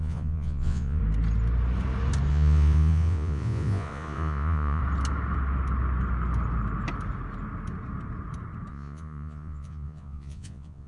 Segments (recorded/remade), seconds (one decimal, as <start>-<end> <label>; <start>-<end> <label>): 0.0-1.0 remade; 1.0-2.3 recorded; 2.3-4.8 remade; 4.8-8.7 recorded; 8.7-10.9 remade

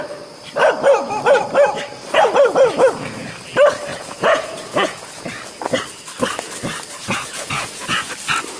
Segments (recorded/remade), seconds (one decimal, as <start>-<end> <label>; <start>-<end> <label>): 0.0-3.9 recorded; 3.9-5.3 remade; 5.3-7.0 recorded; 7.0-8.1 remade; 8.1-8.6 recorded

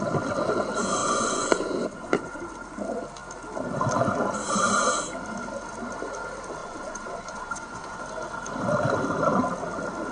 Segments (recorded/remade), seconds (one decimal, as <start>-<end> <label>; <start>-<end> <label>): 0.0-1.0 recorded; 1.0-2.4 remade; 2.4-6.6 recorded; 6.6-8.0 remade; 8.0-10.1 recorded

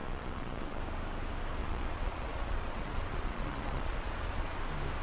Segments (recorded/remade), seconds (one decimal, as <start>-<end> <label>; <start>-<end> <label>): 0.0-0.8 remade; 0.8-1.6 recorded; 1.6-4.6 remade; 4.6-5.0 recorded